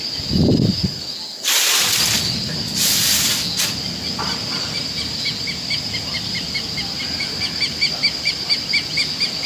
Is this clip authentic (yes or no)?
yes